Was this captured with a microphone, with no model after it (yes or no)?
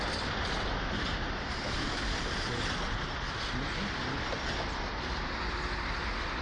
no